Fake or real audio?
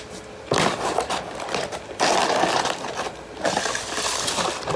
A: fake